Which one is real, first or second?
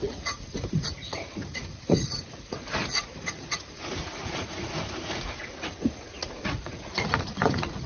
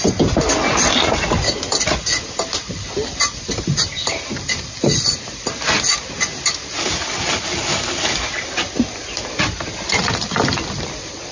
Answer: second